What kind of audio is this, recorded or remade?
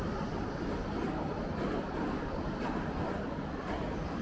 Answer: recorded